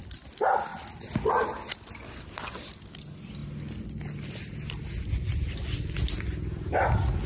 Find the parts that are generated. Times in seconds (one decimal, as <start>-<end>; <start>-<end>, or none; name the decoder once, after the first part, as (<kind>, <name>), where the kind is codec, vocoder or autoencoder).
none